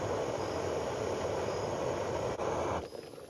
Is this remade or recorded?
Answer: recorded